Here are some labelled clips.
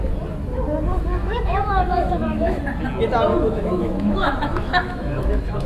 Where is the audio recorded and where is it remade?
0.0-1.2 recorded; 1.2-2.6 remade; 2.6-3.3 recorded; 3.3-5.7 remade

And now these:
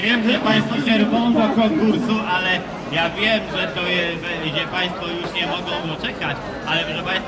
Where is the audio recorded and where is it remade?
0.0-0.9 remade; 0.9-7.3 recorded

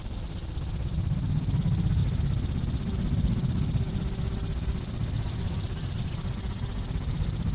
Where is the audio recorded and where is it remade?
0.0-7.5 recorded